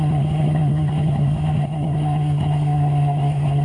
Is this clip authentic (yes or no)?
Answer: no